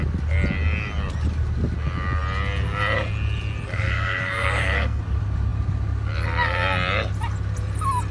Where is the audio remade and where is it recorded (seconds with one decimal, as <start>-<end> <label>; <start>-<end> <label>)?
0.0-3.7 recorded; 3.7-5.0 remade; 5.0-8.1 recorded

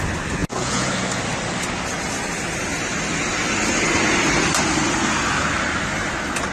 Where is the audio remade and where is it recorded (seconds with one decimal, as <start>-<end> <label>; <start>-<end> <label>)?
0.0-0.4 recorded; 0.4-0.9 remade; 0.9-6.5 recorded

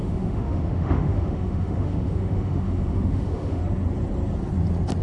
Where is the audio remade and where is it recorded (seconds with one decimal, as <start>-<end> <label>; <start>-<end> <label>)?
0.0-3.6 remade; 3.6-5.0 recorded

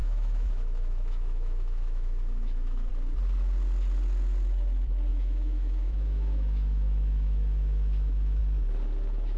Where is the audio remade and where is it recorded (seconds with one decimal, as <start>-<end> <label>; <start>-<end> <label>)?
0.0-2.9 remade; 2.9-5.1 recorded; 5.1-8.4 remade; 8.4-9.4 recorded

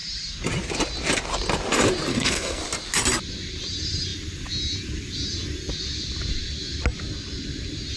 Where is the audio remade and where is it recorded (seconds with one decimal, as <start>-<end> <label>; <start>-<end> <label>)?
0.0-2.1 recorded; 2.1-2.6 remade; 2.6-8.0 recorded